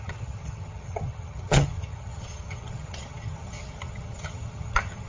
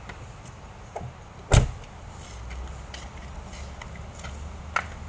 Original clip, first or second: second